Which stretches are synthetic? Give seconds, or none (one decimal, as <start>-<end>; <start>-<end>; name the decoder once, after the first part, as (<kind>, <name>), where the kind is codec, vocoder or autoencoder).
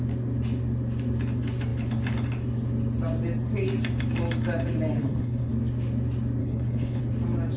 5.0-5.5 (codec, HILCodec); 6.4-7.0